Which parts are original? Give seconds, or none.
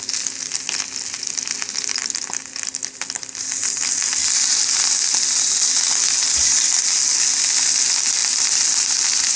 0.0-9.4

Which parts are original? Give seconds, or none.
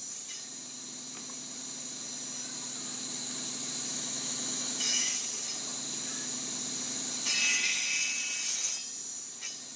0.0-3.9; 5.1-9.8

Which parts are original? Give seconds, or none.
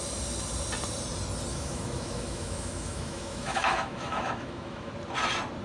0.0-1.5; 4.9-5.6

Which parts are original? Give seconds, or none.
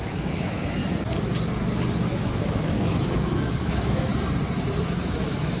0.8-2.1; 4.1-4.8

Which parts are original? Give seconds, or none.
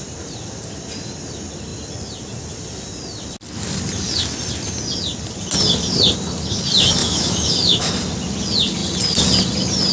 0.0-7.0; 7.9-9.9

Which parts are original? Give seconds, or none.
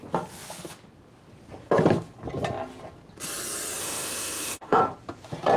0.0-3.8; 4.8-5.6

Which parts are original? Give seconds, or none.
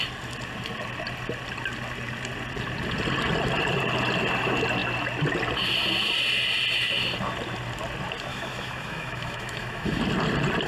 0.0-8.3; 10.0-10.7